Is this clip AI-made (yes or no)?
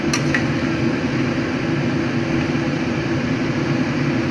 no